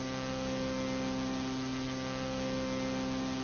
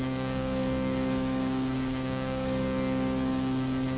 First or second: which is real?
first